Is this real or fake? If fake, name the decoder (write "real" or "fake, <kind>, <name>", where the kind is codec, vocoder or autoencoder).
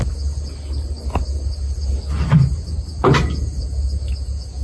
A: real